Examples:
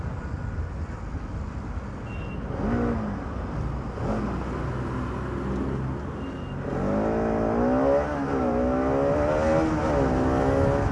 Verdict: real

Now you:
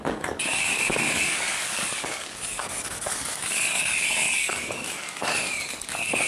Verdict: fake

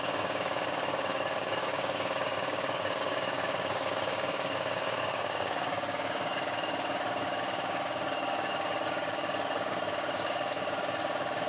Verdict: fake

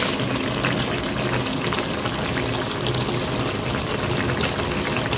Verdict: real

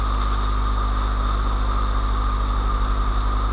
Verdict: real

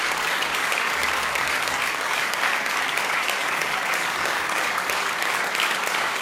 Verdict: fake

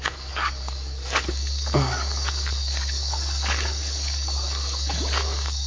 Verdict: fake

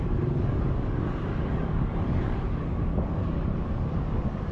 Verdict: fake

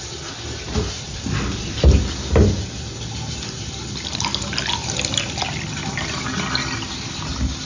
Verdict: real